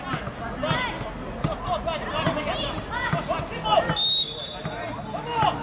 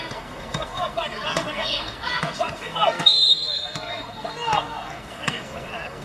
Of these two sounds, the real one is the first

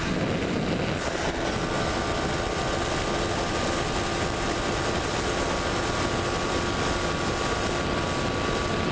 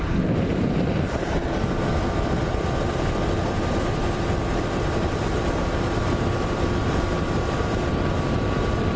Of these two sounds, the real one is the first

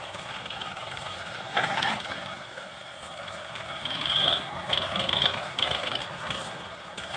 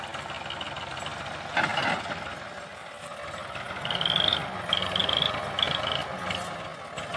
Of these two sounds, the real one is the second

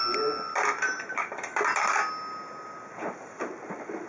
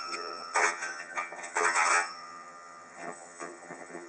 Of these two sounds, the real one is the first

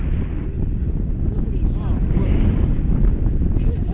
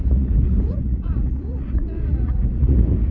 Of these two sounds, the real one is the first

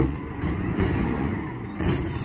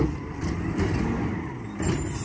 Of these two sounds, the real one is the second